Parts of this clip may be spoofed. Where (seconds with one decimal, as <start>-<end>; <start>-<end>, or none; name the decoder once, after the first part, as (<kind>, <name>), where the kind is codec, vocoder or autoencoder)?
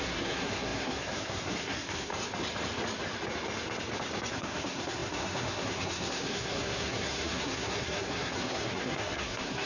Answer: 0.0-2.1 (codec, SNAC); 4.3-9.7